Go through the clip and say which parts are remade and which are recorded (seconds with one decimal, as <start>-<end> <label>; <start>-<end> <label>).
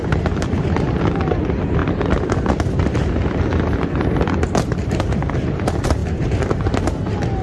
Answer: 0.0-7.4 remade